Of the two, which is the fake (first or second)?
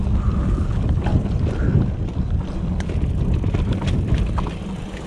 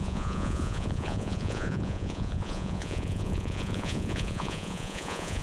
second